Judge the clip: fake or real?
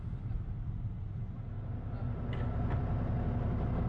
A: real